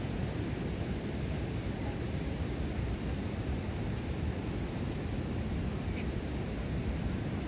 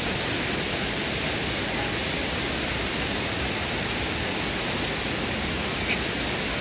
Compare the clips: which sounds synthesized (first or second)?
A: first